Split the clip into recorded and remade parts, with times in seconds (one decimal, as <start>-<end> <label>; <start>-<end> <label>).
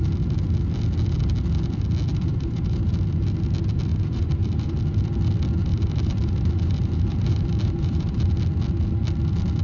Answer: 0.0-2.1 recorded; 2.1-2.9 remade; 2.9-3.9 recorded; 3.9-4.7 remade; 4.7-5.7 recorded; 5.7-8.3 remade; 8.3-9.6 recorded